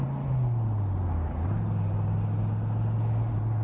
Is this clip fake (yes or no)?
no